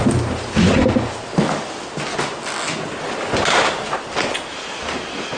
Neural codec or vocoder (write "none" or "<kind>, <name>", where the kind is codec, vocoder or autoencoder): none